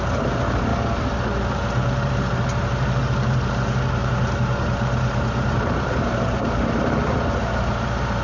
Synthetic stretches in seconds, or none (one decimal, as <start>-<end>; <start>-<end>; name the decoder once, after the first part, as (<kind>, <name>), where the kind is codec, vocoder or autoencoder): 0.0-0.7 (vocoder, BigVGAN v2); 1.5-8.2